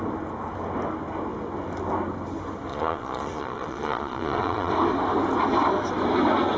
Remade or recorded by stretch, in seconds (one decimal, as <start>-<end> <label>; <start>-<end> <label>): 0.0-2.7 recorded; 2.7-4.7 remade; 4.7-6.6 recorded